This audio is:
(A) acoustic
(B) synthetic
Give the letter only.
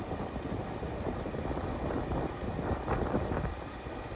A